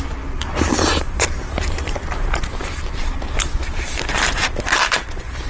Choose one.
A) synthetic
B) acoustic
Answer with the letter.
A